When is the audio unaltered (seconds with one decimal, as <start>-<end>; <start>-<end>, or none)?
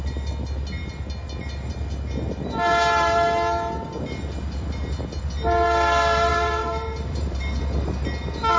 0.0-6.3; 7.6-8.6